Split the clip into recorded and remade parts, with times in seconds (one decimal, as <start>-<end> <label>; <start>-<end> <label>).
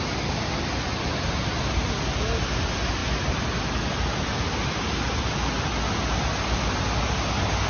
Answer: 0.0-7.7 recorded